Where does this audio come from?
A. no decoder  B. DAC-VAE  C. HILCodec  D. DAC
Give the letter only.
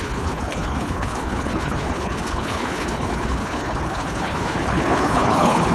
C